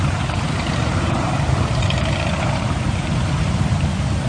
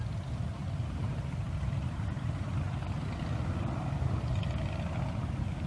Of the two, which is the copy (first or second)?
first